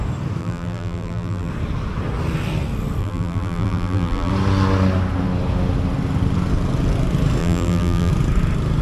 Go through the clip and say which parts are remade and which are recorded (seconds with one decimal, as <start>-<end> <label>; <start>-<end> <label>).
0.0-0.4 recorded; 0.4-1.5 remade; 1.5-3.0 recorded; 3.0-4.3 remade; 4.3-7.4 recorded; 7.4-8.1 remade; 8.1-8.8 recorded